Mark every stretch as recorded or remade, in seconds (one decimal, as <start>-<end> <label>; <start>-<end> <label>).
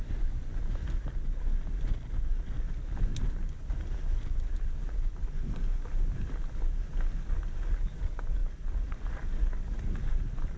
0.0-10.6 recorded